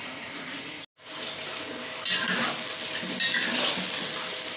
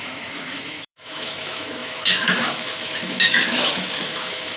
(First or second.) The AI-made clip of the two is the second